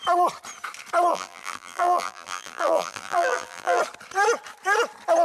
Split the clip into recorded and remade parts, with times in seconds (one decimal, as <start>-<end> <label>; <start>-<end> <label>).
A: 0.0-1.1 recorded; 1.1-3.8 remade; 3.8-5.2 recorded